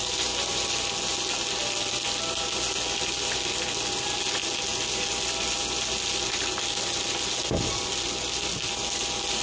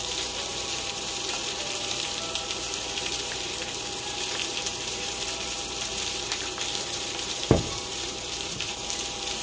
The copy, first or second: second